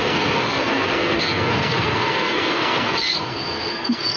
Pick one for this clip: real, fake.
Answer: fake